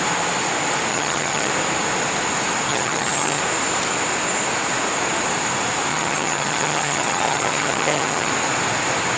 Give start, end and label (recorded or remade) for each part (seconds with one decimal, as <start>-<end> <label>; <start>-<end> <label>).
0.0-0.9 recorded; 0.9-1.5 remade; 1.5-2.7 recorded; 2.7-3.4 remade; 3.4-5.9 recorded; 5.9-8.3 remade; 8.3-9.2 recorded